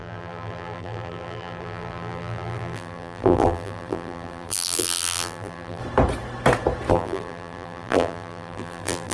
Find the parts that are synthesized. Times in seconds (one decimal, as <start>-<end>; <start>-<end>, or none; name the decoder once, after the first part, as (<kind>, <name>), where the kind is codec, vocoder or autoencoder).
0.0-5.8 (vocoder, BigVGAN v2); 6.9-9.1